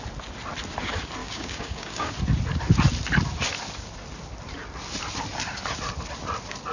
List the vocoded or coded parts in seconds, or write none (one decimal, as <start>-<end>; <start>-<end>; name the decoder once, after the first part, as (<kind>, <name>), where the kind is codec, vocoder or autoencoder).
1.2-2.1 (codec, DAC)